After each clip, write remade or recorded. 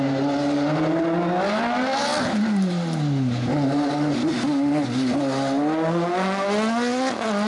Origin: recorded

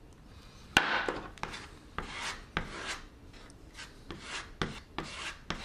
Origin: recorded